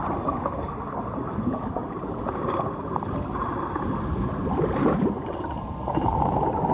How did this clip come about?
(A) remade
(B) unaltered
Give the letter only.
B